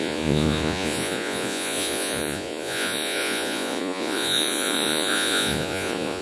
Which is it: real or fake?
fake